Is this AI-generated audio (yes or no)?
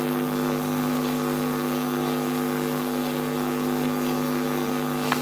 yes